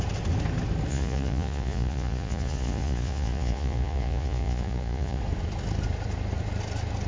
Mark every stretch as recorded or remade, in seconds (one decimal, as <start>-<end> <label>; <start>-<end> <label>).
0.0-0.9 recorded; 0.9-5.2 remade; 5.2-7.1 recorded